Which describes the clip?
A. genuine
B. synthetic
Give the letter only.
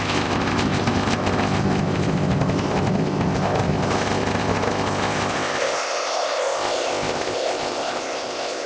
B